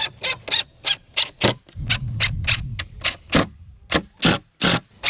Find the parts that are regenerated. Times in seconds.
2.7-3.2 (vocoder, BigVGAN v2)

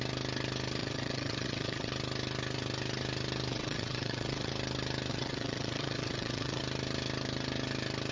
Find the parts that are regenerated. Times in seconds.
0.8-1.9 (vocoder, WaveNeXt); 3.5-4.5; 5.1-6.6

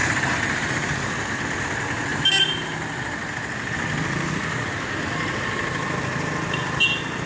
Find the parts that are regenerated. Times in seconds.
0.0-1.1 (vocoder, BigVGAN v2)

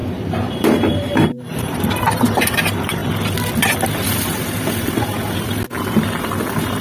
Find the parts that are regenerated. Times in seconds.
0.0-3.0 (vocoder, BigVGAN v2)

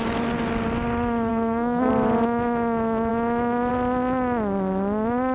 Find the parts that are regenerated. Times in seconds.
1.3-1.9 (codec, SNAC)

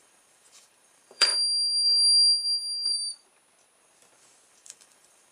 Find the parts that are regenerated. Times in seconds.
0.0-1.3 (vocoder, BigVGAN v2); 4.5-5.3